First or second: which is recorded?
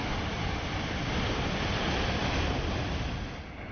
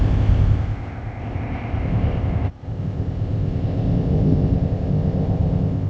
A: first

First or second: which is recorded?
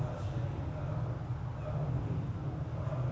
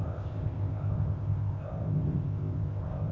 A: first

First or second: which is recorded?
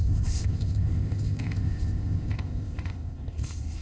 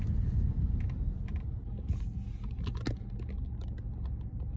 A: second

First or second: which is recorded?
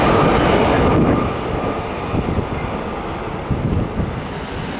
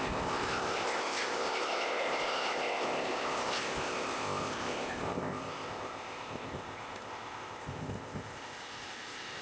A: first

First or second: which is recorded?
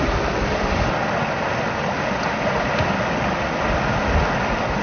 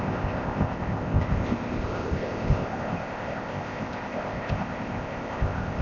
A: first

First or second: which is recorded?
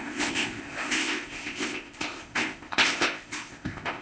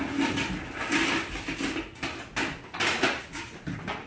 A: second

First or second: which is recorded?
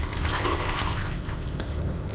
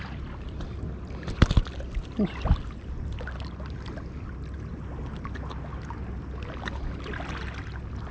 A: second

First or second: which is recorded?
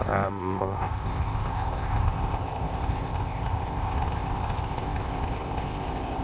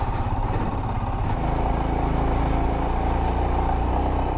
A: second